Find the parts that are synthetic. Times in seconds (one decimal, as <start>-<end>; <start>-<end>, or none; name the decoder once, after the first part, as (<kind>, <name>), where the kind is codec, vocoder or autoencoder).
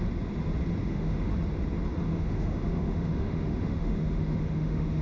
0.8-1.3 (autoencoder, DAC-VAE); 2.1-5.0